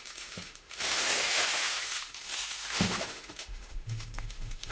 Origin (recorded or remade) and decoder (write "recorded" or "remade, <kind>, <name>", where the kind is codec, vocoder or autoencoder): remade, autoencoder, DAC-VAE